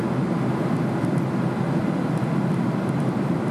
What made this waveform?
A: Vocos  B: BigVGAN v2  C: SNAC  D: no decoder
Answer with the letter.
D